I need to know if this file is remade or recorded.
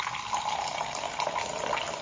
recorded